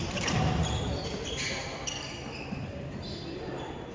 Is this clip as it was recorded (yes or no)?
yes